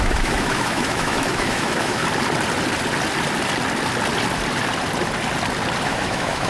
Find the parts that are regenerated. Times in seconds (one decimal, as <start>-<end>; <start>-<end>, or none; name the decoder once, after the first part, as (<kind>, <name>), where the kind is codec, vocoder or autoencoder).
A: 0.0-2.0 (autoencoder, DAC-VAE); 5.8-6.5